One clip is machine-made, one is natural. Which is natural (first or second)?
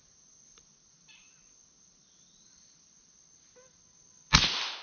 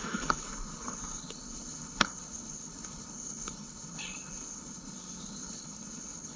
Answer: first